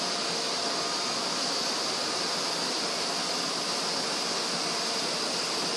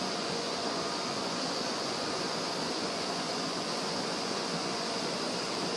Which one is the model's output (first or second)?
second